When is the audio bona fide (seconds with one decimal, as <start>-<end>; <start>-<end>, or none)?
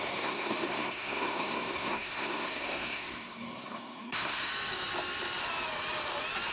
4.5-6.5